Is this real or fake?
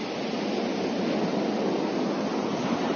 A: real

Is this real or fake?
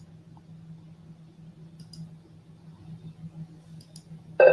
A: real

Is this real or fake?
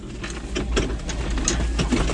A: real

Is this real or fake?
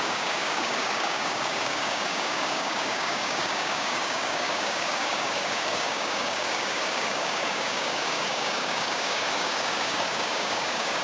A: fake